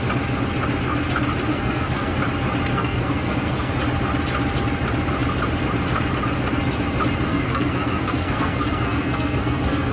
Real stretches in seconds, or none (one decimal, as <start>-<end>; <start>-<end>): 0.0-1.5; 2.2-2.7; 3.7-7.3